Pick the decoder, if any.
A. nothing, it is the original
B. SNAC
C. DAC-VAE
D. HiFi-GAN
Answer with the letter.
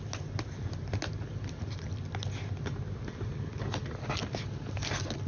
A